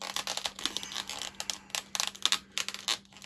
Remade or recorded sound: recorded